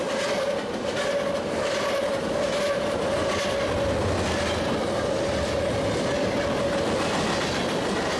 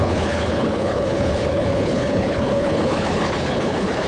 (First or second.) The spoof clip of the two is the second